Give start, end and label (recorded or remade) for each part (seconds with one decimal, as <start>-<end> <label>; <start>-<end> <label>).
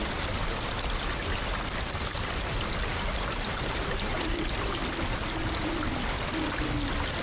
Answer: 0.0-2.9 recorded; 2.9-4.4 remade; 4.4-7.2 recorded